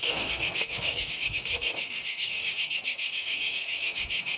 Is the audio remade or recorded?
remade